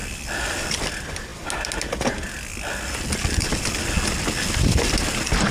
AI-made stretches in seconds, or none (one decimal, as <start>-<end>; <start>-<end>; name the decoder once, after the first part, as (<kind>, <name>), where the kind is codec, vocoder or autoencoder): 0.0-0.7 (vocoder, BigVGAN v2)